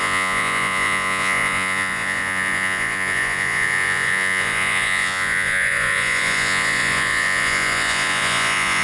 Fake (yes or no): yes